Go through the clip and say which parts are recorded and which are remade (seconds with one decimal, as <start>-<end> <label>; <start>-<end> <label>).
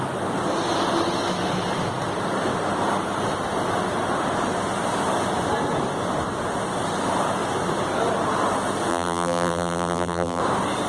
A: 0.0-8.9 recorded; 8.9-10.4 remade; 10.4-10.9 recorded